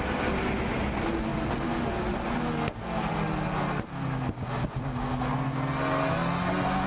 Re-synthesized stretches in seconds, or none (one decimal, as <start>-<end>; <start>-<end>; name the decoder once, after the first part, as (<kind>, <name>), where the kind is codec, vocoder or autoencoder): none